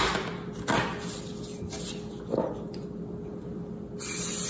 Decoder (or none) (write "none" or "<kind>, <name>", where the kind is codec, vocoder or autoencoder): none